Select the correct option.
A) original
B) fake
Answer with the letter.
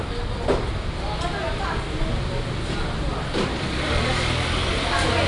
A